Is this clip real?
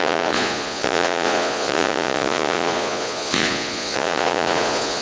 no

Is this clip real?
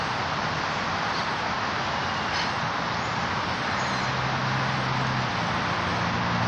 yes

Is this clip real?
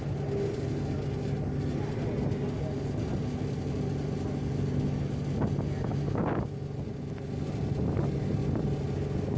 yes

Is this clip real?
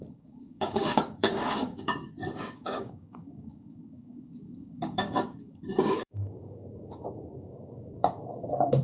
no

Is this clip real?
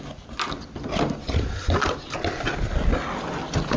yes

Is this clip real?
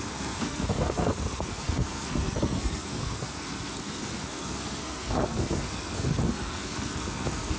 no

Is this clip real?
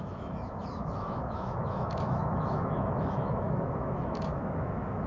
no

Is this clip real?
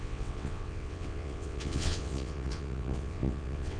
no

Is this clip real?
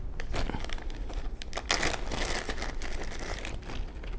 yes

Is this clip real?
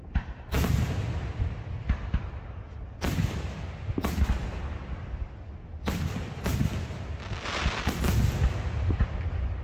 yes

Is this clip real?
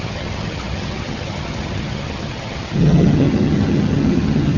no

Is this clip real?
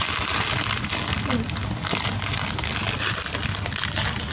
yes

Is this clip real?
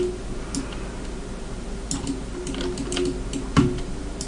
yes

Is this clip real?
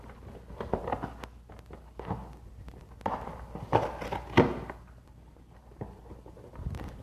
yes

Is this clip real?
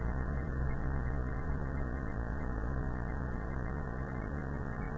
no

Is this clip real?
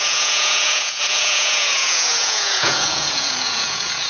no